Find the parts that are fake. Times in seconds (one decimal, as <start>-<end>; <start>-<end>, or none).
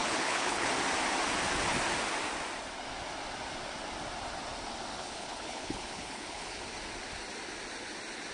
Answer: 0.0-0.7; 4.9-6.6